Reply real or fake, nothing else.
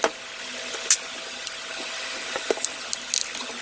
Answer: real